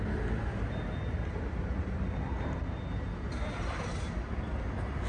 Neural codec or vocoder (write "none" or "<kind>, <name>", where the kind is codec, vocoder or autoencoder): none